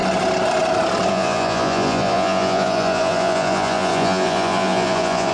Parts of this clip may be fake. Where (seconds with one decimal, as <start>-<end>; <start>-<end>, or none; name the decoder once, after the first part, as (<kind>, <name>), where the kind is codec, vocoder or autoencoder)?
1.1-5.3 (vocoder, Vocos)